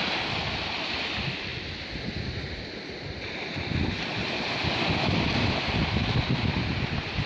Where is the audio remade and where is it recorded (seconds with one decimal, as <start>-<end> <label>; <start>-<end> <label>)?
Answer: 0.0-7.3 recorded